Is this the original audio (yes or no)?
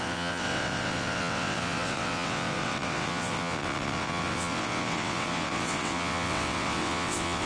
no